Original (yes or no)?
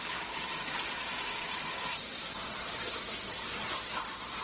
no